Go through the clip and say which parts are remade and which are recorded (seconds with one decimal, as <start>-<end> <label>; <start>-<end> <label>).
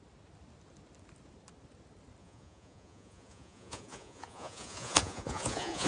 0.0-2.2 recorded; 2.2-5.9 remade